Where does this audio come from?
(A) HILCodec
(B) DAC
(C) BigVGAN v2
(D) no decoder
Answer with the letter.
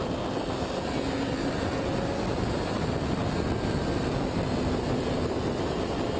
D